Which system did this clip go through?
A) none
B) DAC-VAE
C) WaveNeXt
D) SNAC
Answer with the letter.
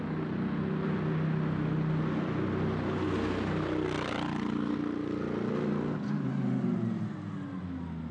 A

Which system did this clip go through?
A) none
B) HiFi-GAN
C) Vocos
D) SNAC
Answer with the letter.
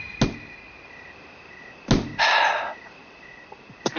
A